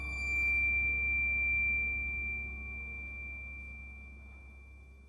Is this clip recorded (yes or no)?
no